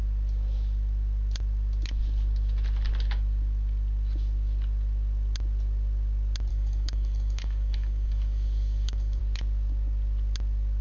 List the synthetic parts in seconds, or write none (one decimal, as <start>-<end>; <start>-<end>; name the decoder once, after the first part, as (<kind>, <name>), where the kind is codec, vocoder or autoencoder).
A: 6.5-9.2 (codec, DAC)